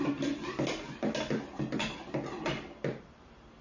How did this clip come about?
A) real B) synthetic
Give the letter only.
A